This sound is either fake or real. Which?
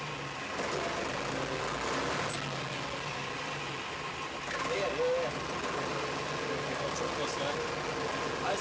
real